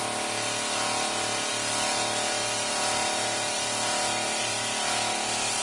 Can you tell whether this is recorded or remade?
recorded